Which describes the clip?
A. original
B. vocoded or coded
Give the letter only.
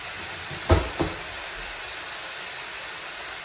A